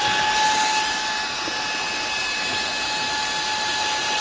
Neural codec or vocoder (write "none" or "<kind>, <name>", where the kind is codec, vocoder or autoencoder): none